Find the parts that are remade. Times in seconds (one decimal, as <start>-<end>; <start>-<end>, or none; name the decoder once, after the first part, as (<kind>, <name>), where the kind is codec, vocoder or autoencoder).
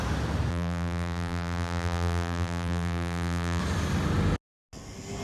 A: 0.5-3.6 (vocoder, BigVGAN v2)